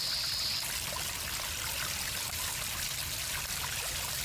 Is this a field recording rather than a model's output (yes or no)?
yes